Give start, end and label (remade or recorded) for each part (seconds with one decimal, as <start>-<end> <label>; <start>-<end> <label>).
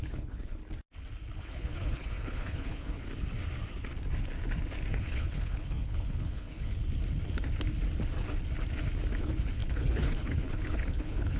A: 0.0-0.6 remade; 0.6-1.4 recorded; 1.4-3.1 remade; 3.1-4.9 recorded; 4.9-6.7 remade; 6.7-9.2 recorded; 9.2-11.4 remade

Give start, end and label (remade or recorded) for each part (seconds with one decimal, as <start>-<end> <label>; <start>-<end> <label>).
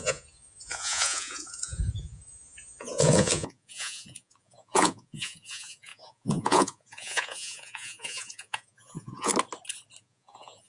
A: 0.0-9.3 remade; 9.3-10.0 recorded; 10.0-10.7 remade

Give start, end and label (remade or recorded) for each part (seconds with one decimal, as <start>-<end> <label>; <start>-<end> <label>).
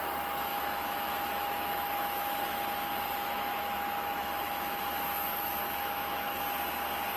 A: 0.0-0.5 recorded; 0.5-4.8 remade; 4.8-5.3 recorded; 5.3-6.4 remade; 6.4-7.2 recorded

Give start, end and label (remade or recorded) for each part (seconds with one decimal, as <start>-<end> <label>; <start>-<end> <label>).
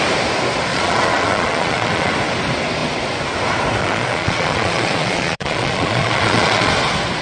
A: 0.0-0.7 recorded; 0.7-2.1 remade; 2.1-3.8 recorded; 3.8-6.7 remade; 6.7-7.2 recorded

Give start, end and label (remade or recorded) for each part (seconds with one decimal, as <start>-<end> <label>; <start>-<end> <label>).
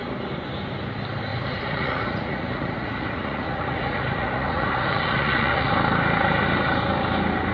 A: 0.0-1.3 recorded; 1.3-5.7 remade; 5.7-7.5 recorded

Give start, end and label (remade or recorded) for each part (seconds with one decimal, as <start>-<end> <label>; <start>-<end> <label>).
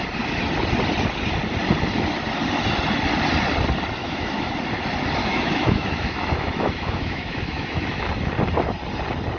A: 0.0-4.0 recorded; 4.0-4.5 remade; 4.5-5.2 recorded; 5.2-8.1 remade; 8.1-9.4 recorded